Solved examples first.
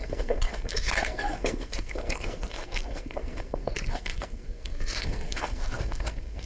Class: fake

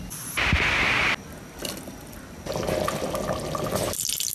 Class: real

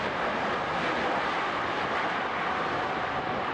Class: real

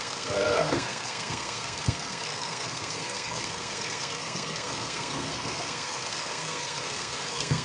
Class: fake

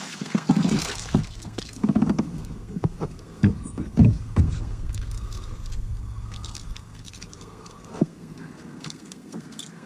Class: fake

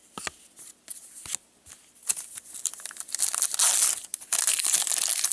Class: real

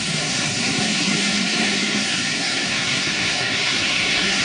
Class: fake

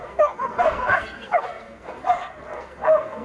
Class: fake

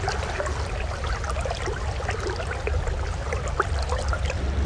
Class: real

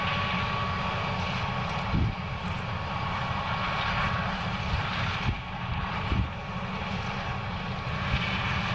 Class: real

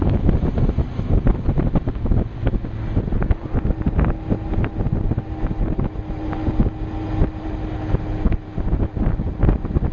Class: real